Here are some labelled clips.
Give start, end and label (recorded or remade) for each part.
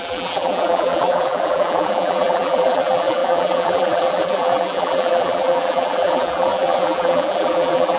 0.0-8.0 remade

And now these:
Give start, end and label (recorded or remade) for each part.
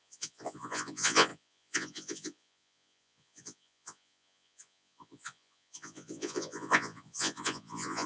0.0-8.1 remade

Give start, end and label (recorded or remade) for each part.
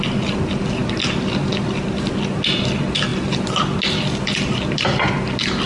0.0-5.7 recorded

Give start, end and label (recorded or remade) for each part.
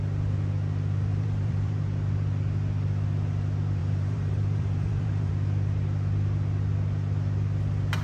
0.0-1.1 recorded; 1.1-1.8 remade; 1.8-3.8 recorded; 3.8-5.3 remade; 5.3-8.0 recorded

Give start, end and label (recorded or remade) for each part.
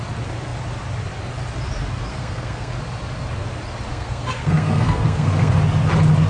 0.0-2.1 recorded; 2.1-2.7 remade; 2.7-3.9 recorded; 3.9-5.5 remade; 5.5-6.3 recorded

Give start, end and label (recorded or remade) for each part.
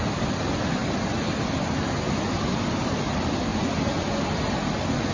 0.0-5.1 recorded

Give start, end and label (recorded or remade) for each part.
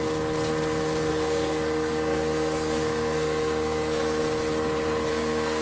0.0-1.1 recorded; 1.1-4.2 remade; 4.2-5.1 recorded; 5.1-5.6 remade